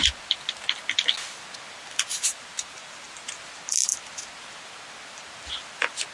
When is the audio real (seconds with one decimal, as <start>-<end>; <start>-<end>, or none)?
0.0-2.1; 3.3-6.1